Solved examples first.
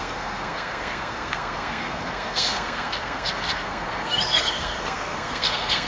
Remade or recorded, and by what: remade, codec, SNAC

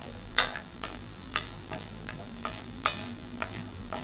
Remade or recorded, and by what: remade, vocoder, BigVGAN v2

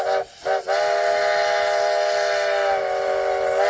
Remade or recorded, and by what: recorded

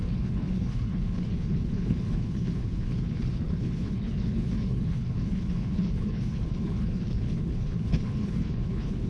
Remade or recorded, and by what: remade, codec, HILCodec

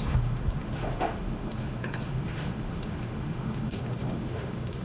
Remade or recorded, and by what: remade, autoencoder, DAC-VAE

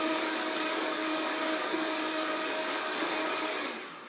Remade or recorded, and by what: remade, codec, DAC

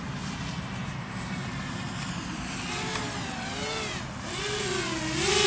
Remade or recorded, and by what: recorded